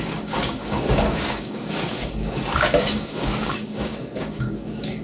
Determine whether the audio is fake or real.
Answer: fake